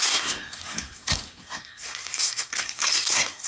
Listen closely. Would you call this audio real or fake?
fake